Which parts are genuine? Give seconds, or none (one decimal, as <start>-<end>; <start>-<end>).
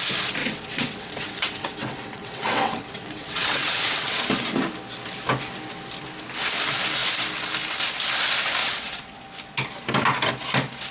0.0-0.4; 4.2-8.6; 9.2-10.9